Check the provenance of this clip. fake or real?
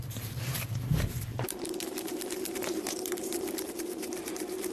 fake